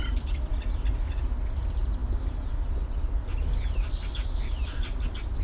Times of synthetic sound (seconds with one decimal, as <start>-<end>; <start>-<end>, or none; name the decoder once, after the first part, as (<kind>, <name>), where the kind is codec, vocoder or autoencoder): none